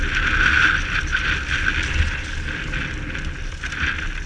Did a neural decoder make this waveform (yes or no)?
no